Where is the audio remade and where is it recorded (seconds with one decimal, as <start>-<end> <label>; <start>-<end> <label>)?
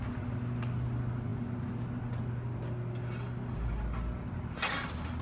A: 0.0-5.2 recorded